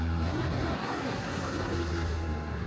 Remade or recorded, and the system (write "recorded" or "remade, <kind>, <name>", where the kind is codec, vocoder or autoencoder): remade, codec, SNAC